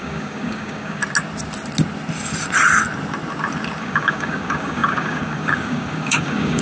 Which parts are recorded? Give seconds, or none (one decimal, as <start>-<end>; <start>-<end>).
1.0-3.8